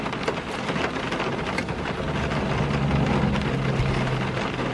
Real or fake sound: real